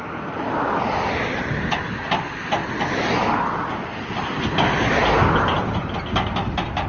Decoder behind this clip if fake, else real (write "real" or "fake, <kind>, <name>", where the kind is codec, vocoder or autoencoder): real